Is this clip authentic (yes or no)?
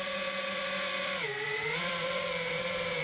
no